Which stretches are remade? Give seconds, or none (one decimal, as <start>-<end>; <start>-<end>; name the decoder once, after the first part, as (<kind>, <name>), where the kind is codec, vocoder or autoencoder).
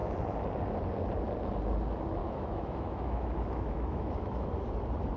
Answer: 2.2-4.5 (autoencoder, DAC-VAE)